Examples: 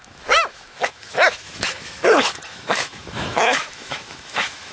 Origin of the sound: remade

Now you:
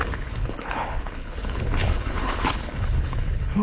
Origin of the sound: remade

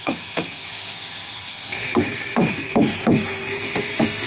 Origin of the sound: remade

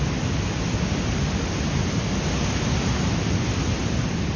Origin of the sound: recorded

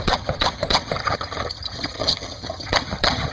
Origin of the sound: remade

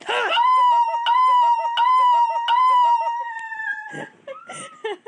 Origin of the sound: recorded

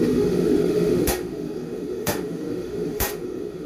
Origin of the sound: remade